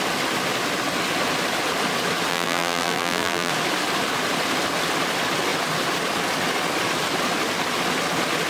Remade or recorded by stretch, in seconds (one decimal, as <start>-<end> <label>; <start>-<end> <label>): 0.0-2.3 recorded; 2.3-3.5 remade; 3.5-8.5 recorded